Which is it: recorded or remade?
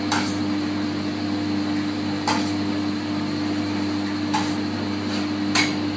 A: recorded